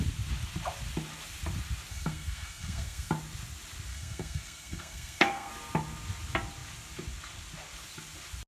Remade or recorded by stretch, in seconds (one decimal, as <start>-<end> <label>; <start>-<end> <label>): 0.0-1.9 recorded; 1.9-3.1 remade; 3.1-3.9 recorded; 3.9-5.5 remade; 5.5-8.5 recorded